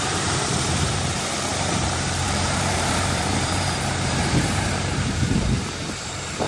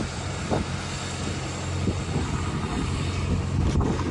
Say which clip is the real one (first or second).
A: second